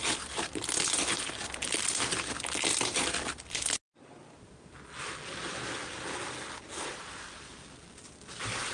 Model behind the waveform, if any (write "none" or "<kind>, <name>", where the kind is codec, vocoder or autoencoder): none